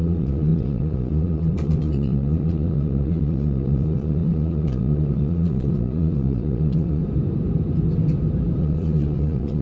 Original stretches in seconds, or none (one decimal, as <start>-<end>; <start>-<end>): 7.0-8.6

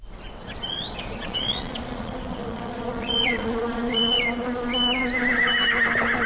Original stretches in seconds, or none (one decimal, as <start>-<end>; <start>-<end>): 0.0-0.4; 4.2-6.3

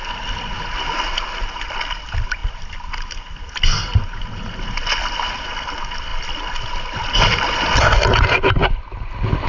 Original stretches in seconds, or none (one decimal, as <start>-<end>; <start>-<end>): 0.0-9.5

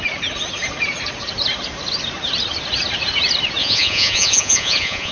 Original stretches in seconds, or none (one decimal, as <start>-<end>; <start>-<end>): 0.0-3.6